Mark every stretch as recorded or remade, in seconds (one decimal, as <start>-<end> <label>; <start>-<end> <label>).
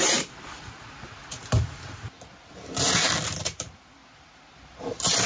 0.0-1.2 remade; 1.2-3.4 recorded; 3.4-4.0 remade; 4.0-5.3 recorded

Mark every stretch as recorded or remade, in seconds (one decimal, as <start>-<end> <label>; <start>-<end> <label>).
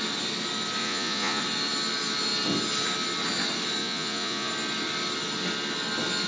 0.0-0.8 recorded; 0.8-1.4 remade; 1.4-3.8 recorded; 3.8-4.5 remade; 4.5-6.3 recorded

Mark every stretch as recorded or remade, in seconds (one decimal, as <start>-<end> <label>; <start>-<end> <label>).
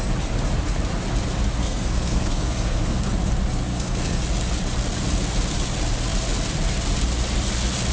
0.0-1.6 recorded; 1.6-3.0 remade; 3.0-3.7 recorded; 3.7-4.2 remade; 4.2-7.9 recorded